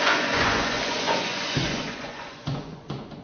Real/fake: fake